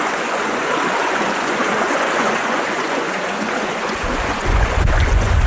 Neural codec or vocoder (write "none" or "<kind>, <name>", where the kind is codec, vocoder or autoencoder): vocoder, Vocos